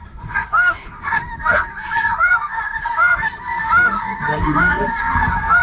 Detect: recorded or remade remade